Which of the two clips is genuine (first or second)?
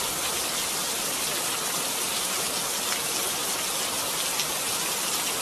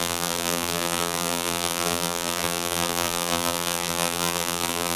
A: first